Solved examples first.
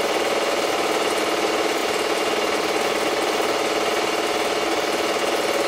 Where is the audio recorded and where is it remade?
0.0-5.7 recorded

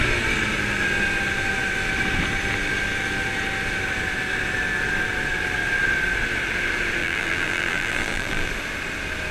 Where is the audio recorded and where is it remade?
0.0-7.0 recorded; 7.0-8.5 remade; 8.5-9.3 recorded

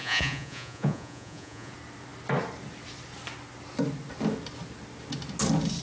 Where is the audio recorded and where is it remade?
0.0-1.7 remade; 1.7-5.8 recorded